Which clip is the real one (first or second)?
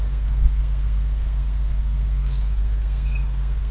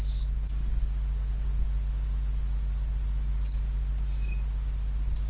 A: second